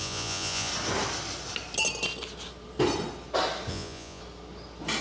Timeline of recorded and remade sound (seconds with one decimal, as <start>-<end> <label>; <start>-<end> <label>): 0.0-0.7 remade; 0.7-3.7 recorded; 3.7-4.2 remade; 4.2-5.0 recorded